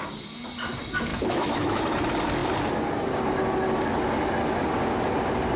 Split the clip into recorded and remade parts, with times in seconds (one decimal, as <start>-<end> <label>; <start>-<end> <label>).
0.0-1.1 recorded; 1.1-1.8 remade; 1.8-5.6 recorded